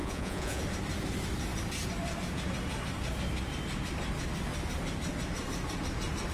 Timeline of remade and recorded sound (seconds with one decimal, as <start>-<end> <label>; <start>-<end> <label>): 0.0-0.6 remade; 0.6-6.3 recorded